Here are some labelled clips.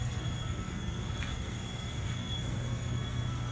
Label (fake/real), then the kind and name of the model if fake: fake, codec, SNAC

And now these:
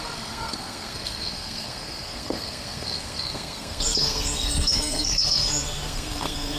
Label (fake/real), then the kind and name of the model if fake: fake, codec, SNAC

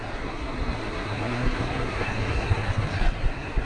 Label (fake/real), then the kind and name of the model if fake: fake, codec, SNAC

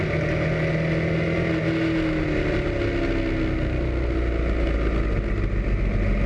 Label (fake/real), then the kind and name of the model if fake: real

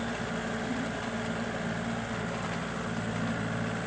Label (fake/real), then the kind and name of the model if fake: real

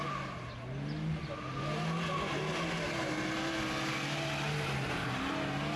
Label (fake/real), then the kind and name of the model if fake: real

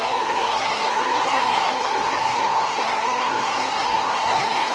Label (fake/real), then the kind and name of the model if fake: fake, codec, SNAC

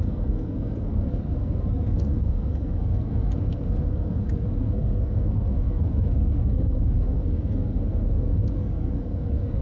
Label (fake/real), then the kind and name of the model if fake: fake, codec, SNAC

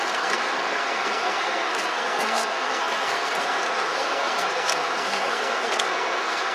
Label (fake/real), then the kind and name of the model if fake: fake, codec, SNAC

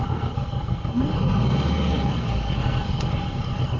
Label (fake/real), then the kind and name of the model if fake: fake, codec, SNAC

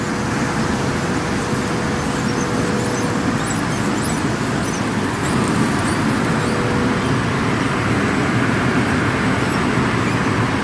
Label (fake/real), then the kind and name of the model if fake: real